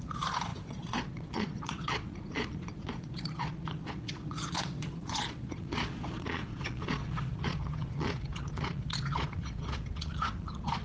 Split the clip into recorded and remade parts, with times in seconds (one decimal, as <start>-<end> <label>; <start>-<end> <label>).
0.0-10.8 remade